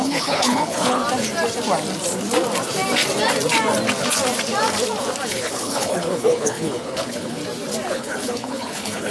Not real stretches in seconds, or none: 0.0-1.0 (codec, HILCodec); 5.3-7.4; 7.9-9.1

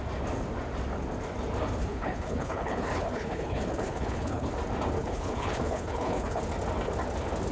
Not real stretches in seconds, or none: 1.8-4.5 (codec, HILCodec); 5.0-6.4

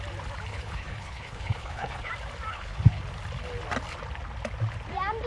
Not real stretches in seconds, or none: 0.5-2.1 (codec, HILCodec); 2.5-3.0

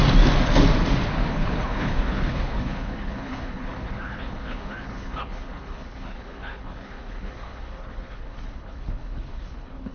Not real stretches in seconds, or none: 1.3-9.9 (codec, HILCodec)

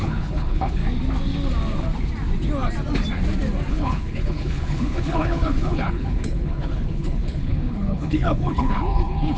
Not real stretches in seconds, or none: 0.0-0.8 (codec, HILCodec); 3.7-9.4

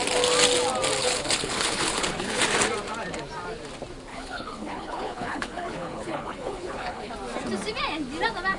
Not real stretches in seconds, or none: 1.0-2.4 (codec, HILCodec); 4.1-7.1

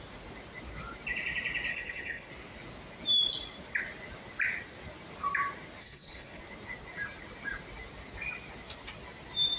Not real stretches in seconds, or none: 1.7-2.3 (codec, HILCodec); 5.8-6.4